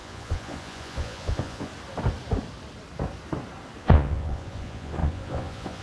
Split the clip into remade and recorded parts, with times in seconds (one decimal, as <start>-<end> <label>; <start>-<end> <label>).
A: 0.0-1.7 remade; 1.7-3.8 recorded; 3.8-5.8 remade

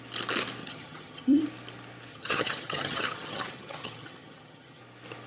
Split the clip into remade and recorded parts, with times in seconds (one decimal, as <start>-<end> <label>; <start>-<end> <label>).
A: 0.0-0.6 recorded; 0.6-1.4 remade; 1.4-2.1 recorded; 2.1-4.8 remade; 4.8-5.3 recorded